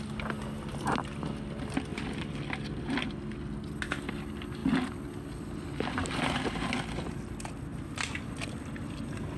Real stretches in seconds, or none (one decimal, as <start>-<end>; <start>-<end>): 0.0-9.4